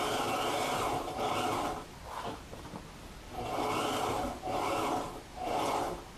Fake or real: real